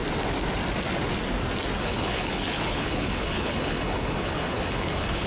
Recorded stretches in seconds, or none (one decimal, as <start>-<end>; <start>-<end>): 0.0-1.8